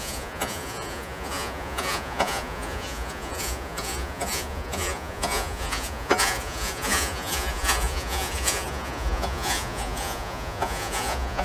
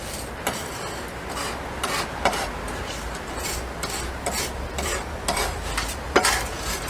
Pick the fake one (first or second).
first